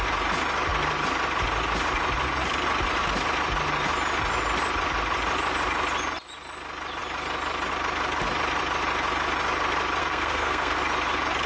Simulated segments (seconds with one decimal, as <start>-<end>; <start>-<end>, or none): 10.0-10.8